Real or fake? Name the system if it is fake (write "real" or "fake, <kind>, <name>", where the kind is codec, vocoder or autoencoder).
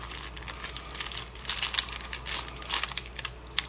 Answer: real